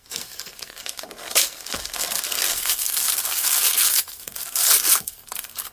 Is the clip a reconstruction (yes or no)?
yes